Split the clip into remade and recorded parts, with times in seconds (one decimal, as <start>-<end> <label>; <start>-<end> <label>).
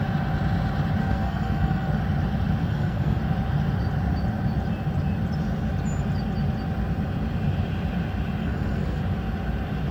0.0-1.0 recorded; 1.0-2.0 remade; 2.0-2.6 recorded; 2.6-3.2 remade; 3.2-8.4 recorded; 8.4-9.0 remade; 9.0-9.9 recorded